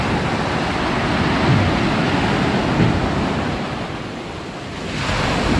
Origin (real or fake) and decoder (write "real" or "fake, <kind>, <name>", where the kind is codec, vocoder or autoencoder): real